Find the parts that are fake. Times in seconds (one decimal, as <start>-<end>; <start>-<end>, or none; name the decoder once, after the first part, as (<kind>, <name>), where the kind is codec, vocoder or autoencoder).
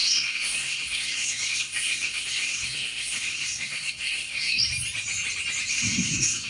0.0-4.6 (codec, SNAC); 5.7-6.5